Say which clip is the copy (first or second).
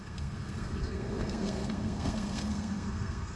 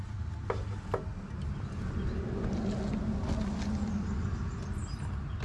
first